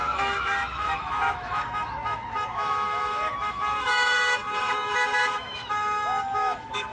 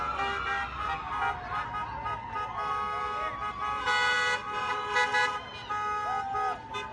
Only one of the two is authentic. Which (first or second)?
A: second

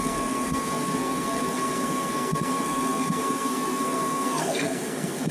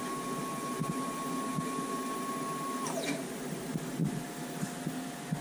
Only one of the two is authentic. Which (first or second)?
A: second